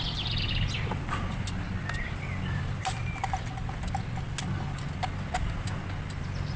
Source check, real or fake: real